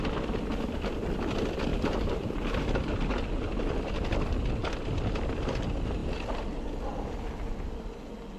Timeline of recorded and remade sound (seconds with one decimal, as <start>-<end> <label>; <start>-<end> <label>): 0.0-1.7 recorded; 1.7-2.9 remade; 2.9-8.4 recorded